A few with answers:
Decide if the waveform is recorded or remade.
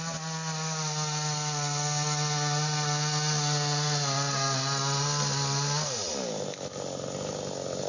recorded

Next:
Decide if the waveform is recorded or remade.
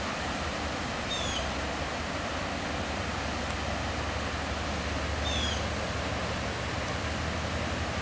recorded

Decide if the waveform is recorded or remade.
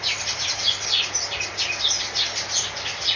recorded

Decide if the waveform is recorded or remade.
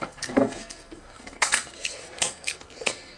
remade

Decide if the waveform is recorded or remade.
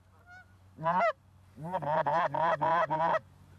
recorded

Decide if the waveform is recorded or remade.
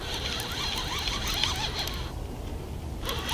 recorded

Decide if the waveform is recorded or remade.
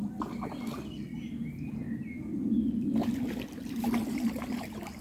recorded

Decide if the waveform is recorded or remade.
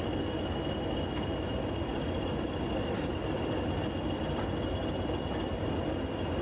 recorded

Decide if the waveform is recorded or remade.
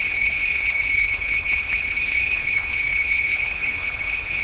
remade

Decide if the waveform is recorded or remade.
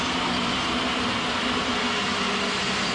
recorded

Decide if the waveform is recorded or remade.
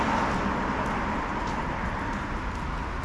recorded